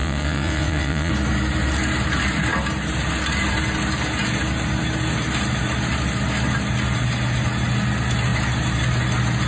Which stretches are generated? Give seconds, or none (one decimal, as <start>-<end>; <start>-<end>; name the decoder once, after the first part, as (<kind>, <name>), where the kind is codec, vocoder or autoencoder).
0.0-1.1 (vocoder, WaveNeXt)

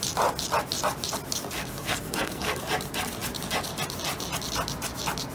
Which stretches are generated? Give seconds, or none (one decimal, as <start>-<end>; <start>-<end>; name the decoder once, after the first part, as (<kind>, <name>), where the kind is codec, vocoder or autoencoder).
1.6-2.6 (codec, SNAC)

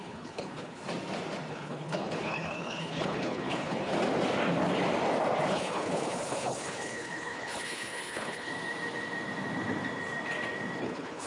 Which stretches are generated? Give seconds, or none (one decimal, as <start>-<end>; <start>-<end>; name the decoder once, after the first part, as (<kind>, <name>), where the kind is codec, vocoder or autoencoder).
0.0-0.8 (codec, HILCodec); 1.5-3.9; 5.5-8.5; 10.8-11.3

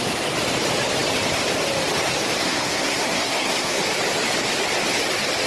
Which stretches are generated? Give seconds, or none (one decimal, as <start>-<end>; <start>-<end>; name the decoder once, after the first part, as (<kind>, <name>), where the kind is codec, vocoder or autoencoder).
2.4-3.8 (codec, SNAC)

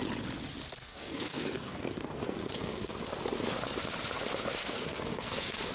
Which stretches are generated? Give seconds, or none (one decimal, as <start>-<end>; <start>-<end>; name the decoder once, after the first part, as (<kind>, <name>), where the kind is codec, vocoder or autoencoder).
0.8-2.9 (codec, SNAC); 4.6-5.7

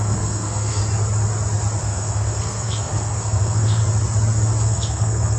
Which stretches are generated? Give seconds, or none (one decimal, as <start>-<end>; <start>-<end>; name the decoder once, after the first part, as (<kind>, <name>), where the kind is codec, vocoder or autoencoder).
0.0-0.8 (codec, SNAC); 1.8-3.8; 4.6-5.4

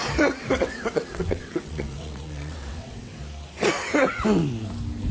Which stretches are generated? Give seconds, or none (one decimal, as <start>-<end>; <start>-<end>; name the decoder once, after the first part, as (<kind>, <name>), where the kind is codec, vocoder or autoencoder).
0.4-3.2 (vocoder, WaveNeXt)

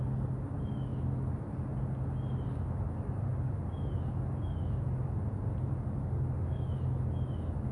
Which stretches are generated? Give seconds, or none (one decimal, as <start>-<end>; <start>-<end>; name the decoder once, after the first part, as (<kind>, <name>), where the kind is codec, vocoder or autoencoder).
none